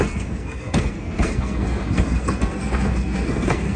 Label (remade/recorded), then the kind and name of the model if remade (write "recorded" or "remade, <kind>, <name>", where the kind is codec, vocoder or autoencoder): remade, codec, SNAC